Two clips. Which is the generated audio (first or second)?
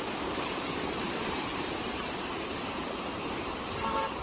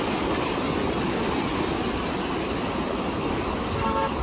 first